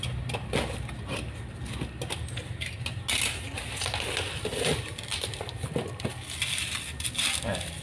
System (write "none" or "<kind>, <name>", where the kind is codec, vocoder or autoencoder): none